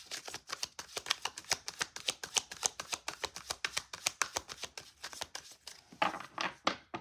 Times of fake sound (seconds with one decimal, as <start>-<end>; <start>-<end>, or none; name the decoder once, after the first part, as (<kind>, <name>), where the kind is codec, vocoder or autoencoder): none